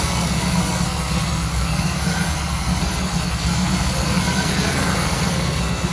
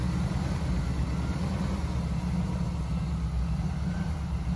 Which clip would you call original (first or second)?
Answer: second